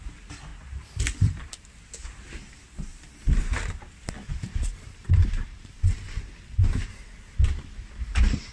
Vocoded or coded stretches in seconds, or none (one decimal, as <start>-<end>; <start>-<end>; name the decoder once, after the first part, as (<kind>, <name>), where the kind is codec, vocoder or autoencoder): 0.5-1.6 (vocoder, BigVGAN v2); 2.9-3.4; 4.3-8.5